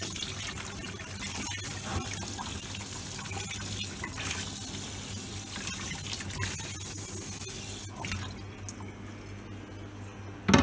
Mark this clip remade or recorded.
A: recorded